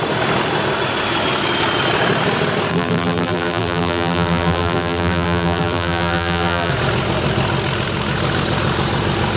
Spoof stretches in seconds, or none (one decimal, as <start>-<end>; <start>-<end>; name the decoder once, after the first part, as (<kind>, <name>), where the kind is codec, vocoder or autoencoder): 2.7-6.7 (vocoder, BigVGAN v2)